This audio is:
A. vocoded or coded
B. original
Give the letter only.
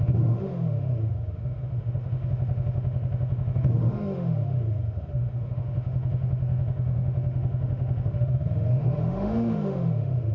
A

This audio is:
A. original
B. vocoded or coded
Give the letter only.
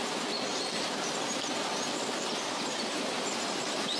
A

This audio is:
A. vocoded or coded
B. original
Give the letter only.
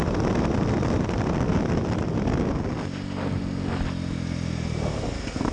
B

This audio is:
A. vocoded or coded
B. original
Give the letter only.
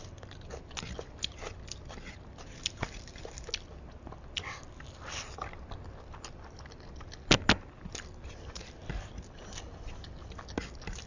B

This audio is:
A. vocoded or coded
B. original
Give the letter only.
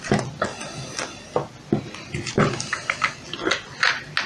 B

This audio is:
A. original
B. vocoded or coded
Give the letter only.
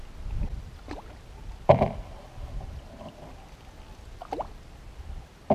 A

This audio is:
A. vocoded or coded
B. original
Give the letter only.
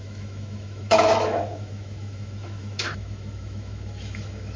A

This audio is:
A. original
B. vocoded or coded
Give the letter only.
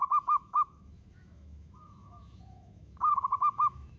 B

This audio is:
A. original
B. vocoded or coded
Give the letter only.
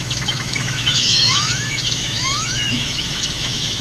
B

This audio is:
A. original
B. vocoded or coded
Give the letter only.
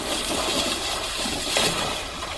A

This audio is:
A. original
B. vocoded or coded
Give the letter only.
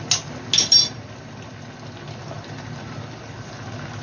A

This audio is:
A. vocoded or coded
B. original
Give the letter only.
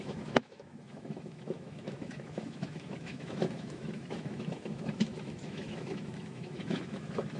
A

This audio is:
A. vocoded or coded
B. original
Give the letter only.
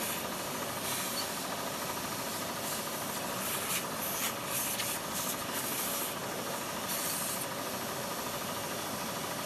B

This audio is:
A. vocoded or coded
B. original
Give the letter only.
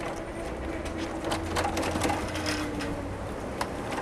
B